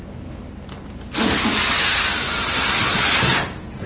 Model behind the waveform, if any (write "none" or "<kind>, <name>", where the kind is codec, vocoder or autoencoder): none